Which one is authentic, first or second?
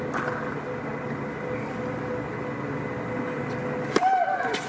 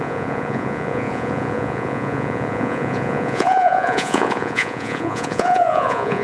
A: first